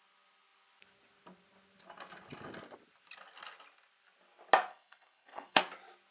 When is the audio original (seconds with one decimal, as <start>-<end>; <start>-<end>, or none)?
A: 0.0-4.7; 5.6-6.1

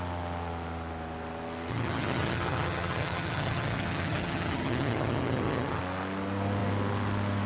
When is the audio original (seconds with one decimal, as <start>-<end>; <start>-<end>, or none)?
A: 0.0-1.7; 5.8-7.5

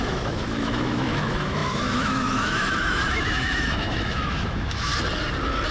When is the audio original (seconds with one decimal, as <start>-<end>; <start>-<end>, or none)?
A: 4.9-5.7

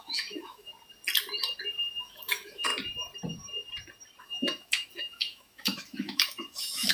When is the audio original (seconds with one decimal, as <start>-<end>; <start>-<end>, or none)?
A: 0.7-2.0; 2.7-4.2

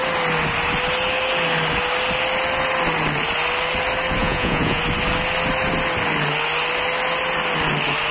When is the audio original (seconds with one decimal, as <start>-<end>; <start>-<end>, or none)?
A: 0.0-4.2; 4.8-8.1